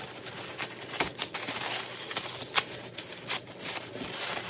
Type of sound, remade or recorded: recorded